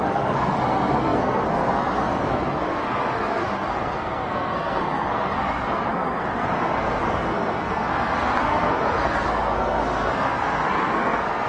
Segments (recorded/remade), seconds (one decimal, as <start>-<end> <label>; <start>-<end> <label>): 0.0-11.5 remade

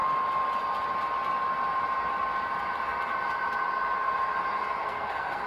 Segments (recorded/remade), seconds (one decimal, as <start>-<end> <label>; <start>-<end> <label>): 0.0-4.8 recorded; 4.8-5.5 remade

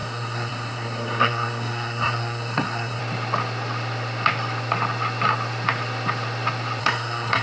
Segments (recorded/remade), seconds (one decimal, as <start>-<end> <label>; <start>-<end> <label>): 0.0-3.0 remade; 3.0-6.8 recorded; 6.8-7.4 remade